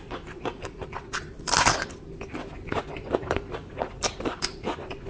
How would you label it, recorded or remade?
remade